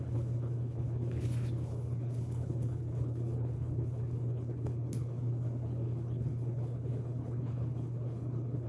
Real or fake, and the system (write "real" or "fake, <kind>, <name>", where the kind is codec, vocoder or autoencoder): fake, codec, HILCodec